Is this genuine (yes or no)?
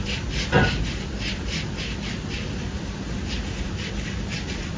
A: yes